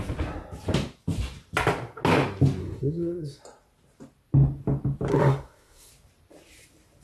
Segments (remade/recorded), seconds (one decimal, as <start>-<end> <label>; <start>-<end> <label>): 0.0-2.6 recorded; 2.6-3.4 remade; 3.4-5.1 recorded; 5.1-5.9 remade; 5.9-7.0 recorded